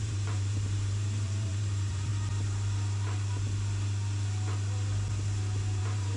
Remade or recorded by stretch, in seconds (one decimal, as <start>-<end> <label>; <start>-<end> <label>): 0.0-2.1 remade; 2.1-5.8 recorded; 5.8-6.2 remade